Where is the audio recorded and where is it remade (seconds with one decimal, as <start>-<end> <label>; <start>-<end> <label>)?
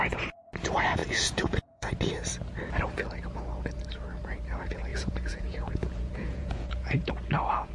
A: 0.0-1.0 recorded; 1.0-1.9 remade; 1.9-4.9 recorded; 4.9-7.1 remade; 7.1-7.7 recorded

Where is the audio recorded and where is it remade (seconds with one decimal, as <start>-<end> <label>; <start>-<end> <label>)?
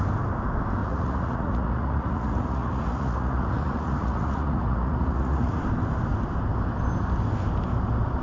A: 0.0-0.8 recorded; 0.8-5.6 remade; 5.6-8.2 recorded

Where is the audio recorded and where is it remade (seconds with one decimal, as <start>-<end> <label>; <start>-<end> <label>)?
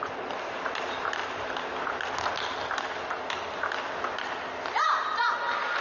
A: 0.0-5.8 recorded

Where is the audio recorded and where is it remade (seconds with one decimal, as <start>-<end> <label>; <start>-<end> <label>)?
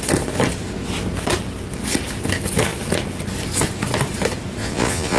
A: 0.0-4.6 recorded; 4.6-5.2 remade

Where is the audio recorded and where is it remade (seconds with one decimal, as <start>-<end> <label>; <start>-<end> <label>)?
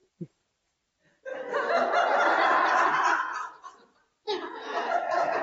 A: 0.0-4.2 recorded; 4.2-5.4 remade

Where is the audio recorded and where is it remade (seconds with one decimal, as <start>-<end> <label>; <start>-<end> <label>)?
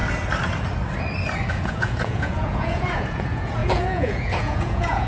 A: 0.0-1.5 recorded; 1.5-5.1 remade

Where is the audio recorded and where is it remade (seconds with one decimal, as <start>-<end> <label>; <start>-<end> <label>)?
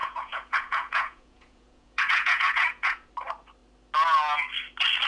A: 0.0-3.1 remade; 3.1-5.1 recorded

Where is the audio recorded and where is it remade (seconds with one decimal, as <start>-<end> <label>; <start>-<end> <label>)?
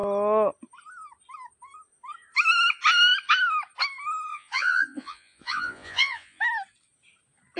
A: 0.0-4.3 recorded; 4.3-6.4 remade; 6.4-7.6 recorded